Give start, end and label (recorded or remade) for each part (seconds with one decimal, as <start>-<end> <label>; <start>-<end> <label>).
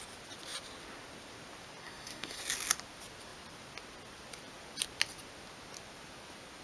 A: 0.0-1.8 recorded; 1.8-2.4 remade; 2.4-6.6 recorded